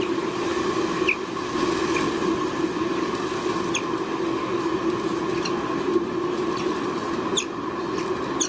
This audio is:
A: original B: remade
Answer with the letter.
A